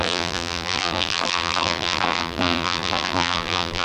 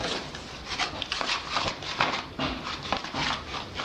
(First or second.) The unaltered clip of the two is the second